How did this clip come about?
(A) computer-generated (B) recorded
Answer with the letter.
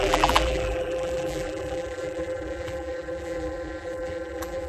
A